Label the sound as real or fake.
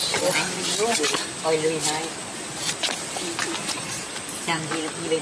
real